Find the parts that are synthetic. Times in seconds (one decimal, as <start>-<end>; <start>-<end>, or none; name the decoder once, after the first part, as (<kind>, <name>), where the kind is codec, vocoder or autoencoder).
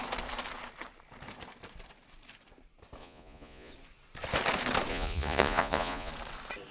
3.0-3.7 (vocoder, Vocos); 4.9-6.1